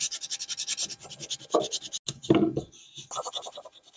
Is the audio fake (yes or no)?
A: no